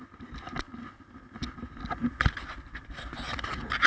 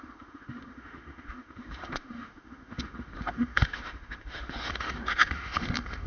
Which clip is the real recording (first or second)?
first